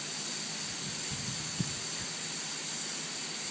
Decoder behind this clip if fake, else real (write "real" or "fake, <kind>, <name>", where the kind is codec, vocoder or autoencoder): real